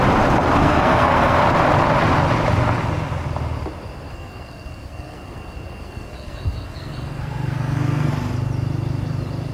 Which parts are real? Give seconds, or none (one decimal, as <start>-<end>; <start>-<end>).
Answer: 0.0-0.6; 1.4-4.1; 8.1-9.5